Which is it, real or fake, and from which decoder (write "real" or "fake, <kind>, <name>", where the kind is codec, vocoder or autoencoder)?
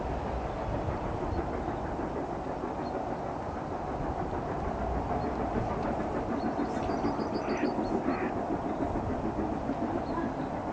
real